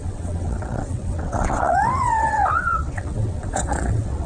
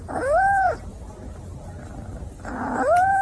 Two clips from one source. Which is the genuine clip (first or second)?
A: second